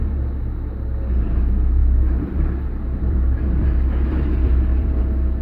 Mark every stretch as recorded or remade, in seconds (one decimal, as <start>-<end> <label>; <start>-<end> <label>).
0.0-5.4 remade